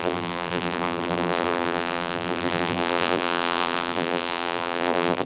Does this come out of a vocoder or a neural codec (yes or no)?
yes